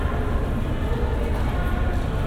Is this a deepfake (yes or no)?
no